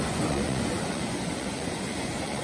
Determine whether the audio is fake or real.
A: fake